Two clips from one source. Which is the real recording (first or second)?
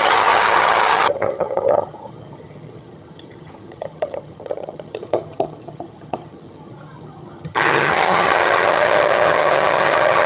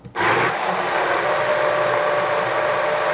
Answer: second